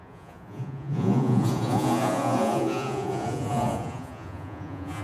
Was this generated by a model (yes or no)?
yes